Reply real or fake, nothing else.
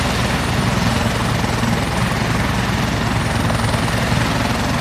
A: real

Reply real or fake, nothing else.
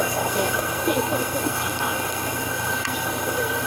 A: fake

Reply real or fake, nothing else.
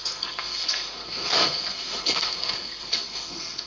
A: fake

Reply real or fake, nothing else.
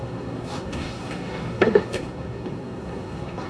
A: fake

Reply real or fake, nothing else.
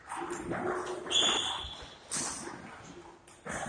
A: real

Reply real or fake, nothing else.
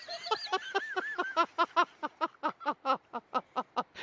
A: real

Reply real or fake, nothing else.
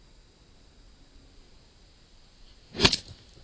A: real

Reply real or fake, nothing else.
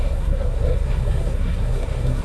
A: fake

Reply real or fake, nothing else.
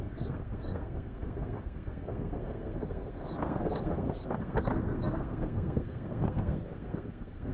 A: fake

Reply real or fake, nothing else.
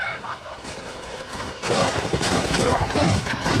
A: fake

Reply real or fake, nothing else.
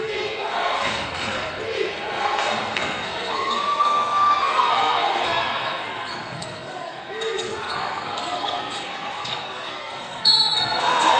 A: fake